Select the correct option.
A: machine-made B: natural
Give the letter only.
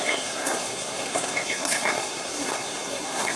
A